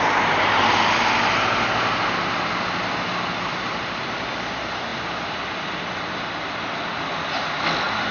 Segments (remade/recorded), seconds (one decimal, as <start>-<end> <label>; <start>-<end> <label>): 0.0-8.1 recorded